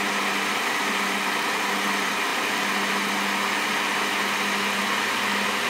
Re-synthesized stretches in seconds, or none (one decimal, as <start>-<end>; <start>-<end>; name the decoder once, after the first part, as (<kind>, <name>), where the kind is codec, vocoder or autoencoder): none